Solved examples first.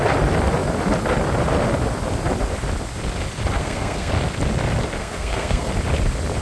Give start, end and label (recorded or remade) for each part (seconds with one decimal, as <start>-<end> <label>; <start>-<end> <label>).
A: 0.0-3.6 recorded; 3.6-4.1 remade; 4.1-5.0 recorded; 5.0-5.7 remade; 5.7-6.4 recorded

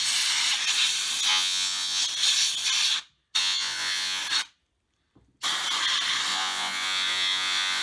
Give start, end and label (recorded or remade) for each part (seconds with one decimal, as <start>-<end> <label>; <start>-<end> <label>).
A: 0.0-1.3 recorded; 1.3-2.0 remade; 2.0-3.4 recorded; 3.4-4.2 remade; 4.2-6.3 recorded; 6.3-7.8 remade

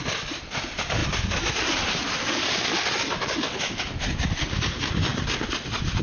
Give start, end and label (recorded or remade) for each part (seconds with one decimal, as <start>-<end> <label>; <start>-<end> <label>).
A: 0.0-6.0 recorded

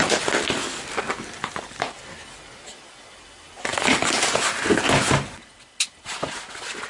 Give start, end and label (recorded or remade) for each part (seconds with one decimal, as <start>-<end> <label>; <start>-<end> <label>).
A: 0.0-6.9 recorded